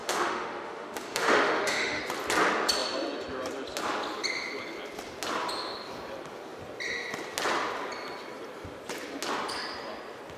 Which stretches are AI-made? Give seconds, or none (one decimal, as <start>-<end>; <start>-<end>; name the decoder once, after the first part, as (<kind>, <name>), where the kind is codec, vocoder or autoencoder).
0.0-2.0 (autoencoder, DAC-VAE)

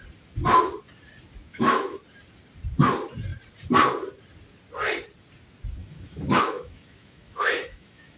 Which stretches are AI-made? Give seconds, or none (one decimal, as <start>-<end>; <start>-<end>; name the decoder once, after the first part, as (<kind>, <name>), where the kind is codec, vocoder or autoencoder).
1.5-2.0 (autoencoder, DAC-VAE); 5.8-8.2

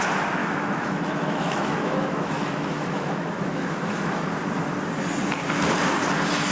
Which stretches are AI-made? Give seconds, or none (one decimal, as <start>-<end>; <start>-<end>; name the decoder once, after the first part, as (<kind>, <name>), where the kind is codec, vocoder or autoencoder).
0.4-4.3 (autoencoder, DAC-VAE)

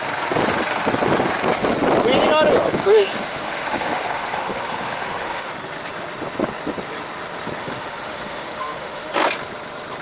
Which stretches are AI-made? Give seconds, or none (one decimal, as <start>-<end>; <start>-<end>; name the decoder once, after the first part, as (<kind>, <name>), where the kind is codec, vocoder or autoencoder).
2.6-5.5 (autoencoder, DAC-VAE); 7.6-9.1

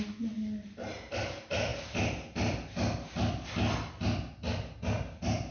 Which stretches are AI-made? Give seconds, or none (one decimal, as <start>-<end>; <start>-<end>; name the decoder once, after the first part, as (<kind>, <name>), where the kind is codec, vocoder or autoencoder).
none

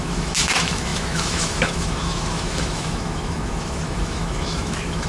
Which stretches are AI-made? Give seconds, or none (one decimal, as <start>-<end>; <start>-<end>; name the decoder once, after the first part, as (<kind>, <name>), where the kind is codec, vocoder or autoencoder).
0.0-5.1 (autoencoder, DAC-VAE)

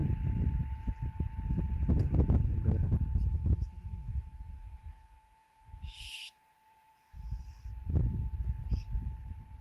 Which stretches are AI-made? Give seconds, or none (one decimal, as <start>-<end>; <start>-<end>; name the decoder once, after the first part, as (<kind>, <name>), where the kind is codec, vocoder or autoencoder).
3.3-7.4 (autoencoder, DAC-VAE)